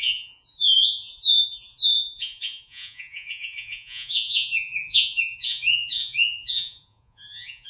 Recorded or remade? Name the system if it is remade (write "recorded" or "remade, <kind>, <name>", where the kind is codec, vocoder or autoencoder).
remade, vocoder, Vocos